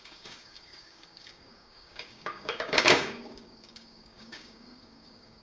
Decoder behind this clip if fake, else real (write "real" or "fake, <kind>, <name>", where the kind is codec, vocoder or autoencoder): fake, codec, DAC